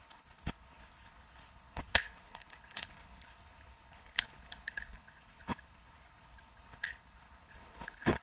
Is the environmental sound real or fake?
fake